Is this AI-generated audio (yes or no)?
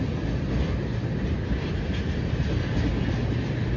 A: no